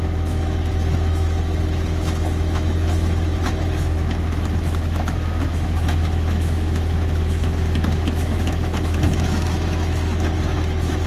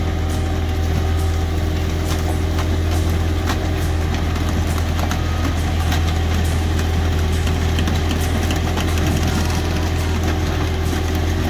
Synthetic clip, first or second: first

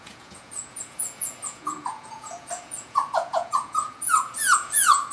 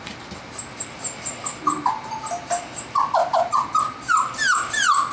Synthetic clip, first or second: first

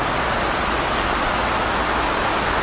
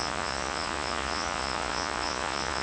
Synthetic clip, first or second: second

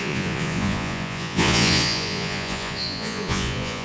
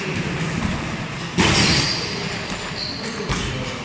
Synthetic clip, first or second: first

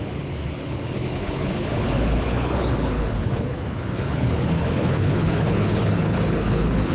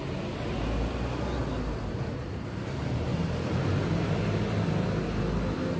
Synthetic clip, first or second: first